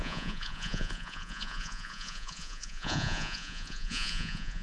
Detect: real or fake fake